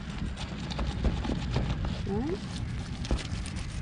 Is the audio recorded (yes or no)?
yes